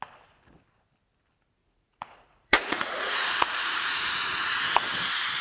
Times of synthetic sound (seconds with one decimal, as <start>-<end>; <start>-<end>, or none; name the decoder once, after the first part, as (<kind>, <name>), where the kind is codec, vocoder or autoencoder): 1.6-4.8 (vocoder, Vocos)